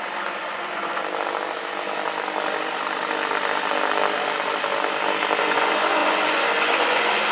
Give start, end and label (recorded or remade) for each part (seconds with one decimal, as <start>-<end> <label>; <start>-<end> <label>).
0.0-1.0 remade; 1.0-5.4 recorded; 5.4-7.3 remade